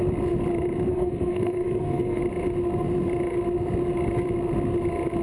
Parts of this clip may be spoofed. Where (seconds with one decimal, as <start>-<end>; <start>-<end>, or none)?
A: 0.9-2.2